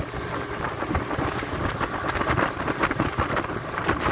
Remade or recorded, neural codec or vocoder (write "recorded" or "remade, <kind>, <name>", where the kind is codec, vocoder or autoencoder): recorded